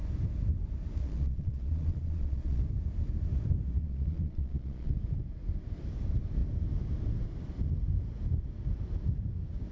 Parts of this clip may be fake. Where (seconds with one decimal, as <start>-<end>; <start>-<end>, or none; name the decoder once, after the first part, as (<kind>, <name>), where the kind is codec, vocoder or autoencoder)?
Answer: 1.0-2.6 (vocoder, Vocos); 3.8-4.9